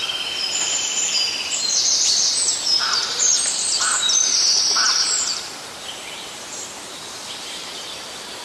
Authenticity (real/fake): fake